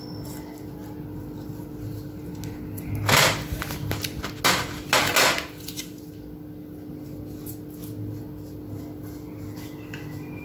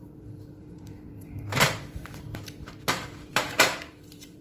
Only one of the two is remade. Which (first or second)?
second